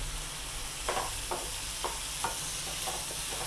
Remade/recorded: recorded